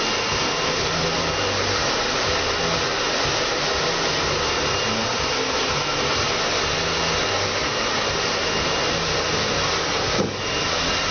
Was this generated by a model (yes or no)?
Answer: no